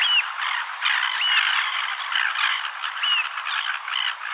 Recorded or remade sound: recorded